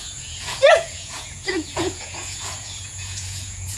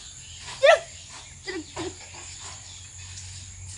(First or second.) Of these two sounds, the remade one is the first